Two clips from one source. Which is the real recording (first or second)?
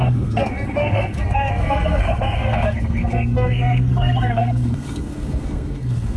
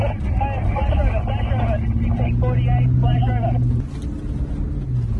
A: second